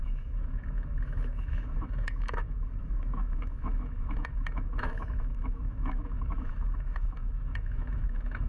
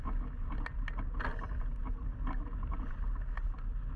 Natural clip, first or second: second